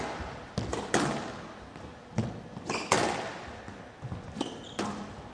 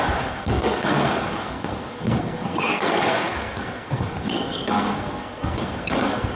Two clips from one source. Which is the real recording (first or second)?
first